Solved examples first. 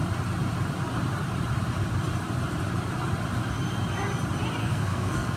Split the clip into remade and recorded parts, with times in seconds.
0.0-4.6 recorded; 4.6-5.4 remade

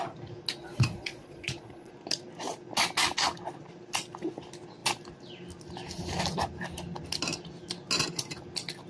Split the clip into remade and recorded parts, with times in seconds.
0.0-0.6 recorded; 0.6-1.9 remade; 1.9-8.9 recorded

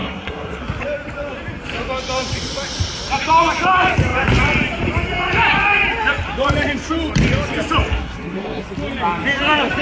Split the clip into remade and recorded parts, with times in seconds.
0.0-0.6 remade; 0.6-7.9 recorded; 7.9-8.6 remade; 8.6-9.8 recorded

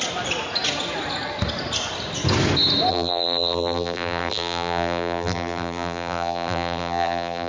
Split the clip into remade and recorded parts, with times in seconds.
0.0-2.9 recorded; 2.9-7.5 remade